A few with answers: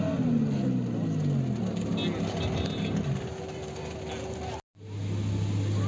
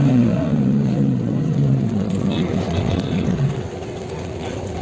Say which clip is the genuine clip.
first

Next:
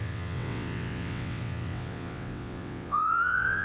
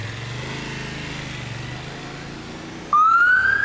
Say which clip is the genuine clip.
second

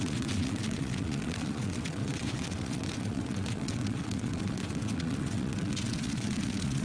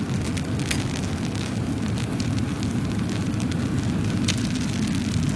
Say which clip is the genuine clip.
second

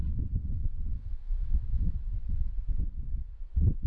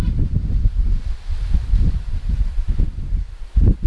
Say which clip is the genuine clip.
second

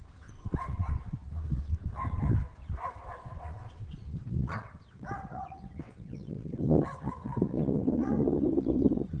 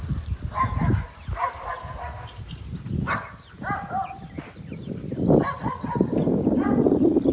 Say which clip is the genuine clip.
second